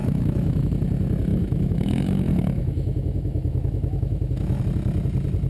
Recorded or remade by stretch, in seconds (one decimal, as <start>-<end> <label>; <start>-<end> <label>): 0.0-0.7 remade; 0.7-1.3 recorded; 1.3-4.6 remade; 4.6-5.5 recorded